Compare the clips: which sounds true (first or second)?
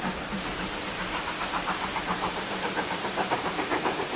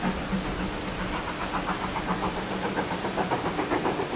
second